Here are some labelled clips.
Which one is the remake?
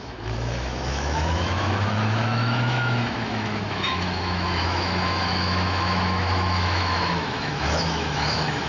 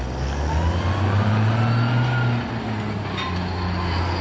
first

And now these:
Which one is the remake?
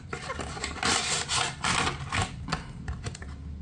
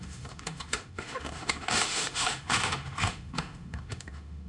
second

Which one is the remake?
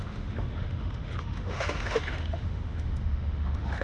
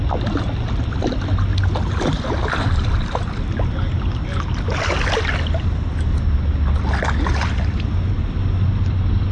first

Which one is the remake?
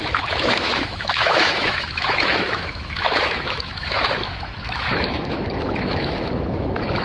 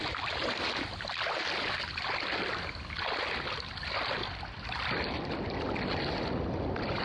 first